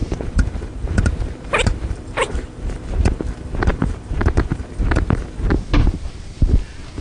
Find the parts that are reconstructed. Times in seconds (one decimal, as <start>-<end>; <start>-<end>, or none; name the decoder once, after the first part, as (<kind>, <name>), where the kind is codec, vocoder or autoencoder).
0.0-3.2 (vocoder, BigVGAN v2); 3.7-4.7